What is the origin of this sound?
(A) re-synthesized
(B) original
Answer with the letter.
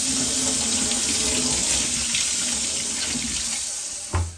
B